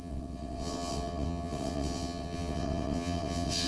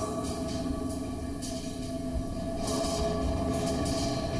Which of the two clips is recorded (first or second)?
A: second